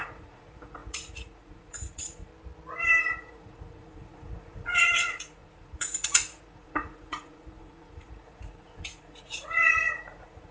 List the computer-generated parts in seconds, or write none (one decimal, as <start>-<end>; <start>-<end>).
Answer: 0.0-2.3; 3.0-10.5